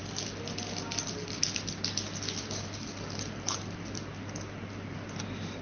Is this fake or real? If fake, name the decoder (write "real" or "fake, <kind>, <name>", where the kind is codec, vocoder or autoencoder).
real